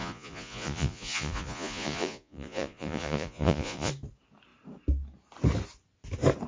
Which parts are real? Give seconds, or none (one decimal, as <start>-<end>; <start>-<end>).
3.9-6.5